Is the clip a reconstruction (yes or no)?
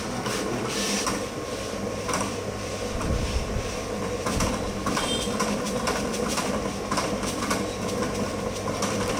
yes